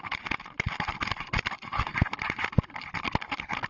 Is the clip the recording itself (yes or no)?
yes